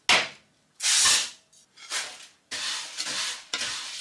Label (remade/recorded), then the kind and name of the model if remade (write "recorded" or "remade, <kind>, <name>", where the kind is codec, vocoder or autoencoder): recorded